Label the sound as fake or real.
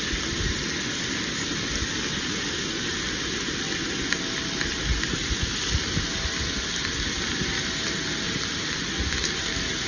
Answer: real